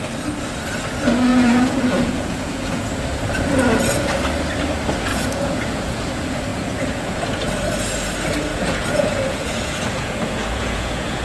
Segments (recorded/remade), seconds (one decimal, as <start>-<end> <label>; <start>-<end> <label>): 0.0-1.3 recorded; 1.3-2.9 remade; 2.9-5.1 recorded; 5.1-6.0 remade; 6.0-6.5 recorded; 6.5-7.5 remade; 7.5-8.5 recorded; 8.5-11.2 remade